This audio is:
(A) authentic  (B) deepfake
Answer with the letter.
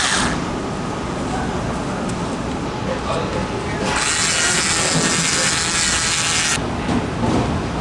A